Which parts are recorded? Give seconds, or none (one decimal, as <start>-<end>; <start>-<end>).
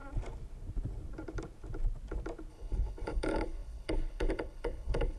0.0-2.5